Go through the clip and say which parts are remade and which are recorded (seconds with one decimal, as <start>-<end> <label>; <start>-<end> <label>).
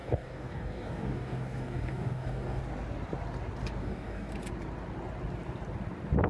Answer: 0.0-2.6 remade; 2.6-3.8 recorded; 3.8-4.3 remade; 4.3-6.3 recorded